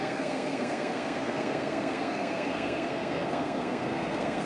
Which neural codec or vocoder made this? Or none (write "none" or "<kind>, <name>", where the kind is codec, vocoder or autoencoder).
codec, SNAC